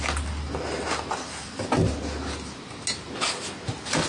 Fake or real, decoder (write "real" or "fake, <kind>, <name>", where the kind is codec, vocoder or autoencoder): real